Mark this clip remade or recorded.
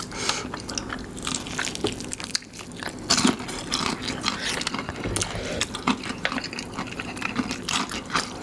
recorded